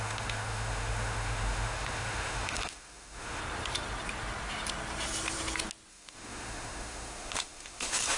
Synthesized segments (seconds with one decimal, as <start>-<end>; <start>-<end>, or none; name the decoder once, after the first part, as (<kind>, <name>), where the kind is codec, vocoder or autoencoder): 0.0-3.4 (autoencoder, DAC-VAE); 5.9-8.2